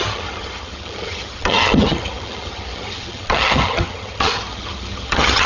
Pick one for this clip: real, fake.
fake